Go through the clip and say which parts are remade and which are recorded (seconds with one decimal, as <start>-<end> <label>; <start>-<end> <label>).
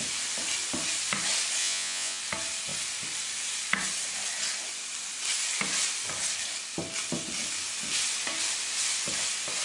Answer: 0.0-1.6 recorded; 1.6-2.2 remade; 2.2-9.6 recorded